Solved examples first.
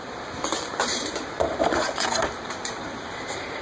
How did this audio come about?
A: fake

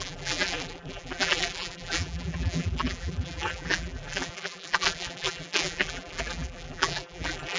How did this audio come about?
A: fake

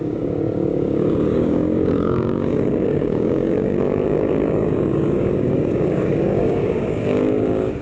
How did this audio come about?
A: fake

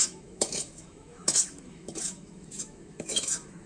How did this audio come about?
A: fake